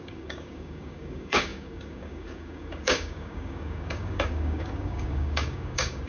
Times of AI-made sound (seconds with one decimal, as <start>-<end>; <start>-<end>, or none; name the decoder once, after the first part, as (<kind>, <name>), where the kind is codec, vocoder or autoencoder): 0.0-6.1 (codec, DAC)